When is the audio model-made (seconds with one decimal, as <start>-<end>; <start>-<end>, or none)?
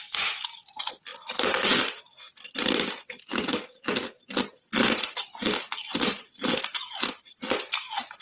none